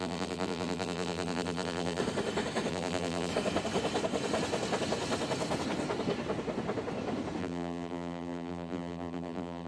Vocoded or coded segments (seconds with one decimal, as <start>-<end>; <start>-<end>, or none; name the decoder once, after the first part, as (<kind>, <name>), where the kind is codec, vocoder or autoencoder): 0.0-2.0 (vocoder, BigVGAN v2); 2.7-3.3; 7.4-9.7